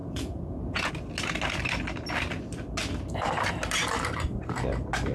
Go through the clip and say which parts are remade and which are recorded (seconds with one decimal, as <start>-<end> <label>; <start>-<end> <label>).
0.0-0.9 remade; 0.9-5.1 recorded